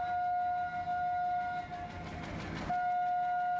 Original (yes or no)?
yes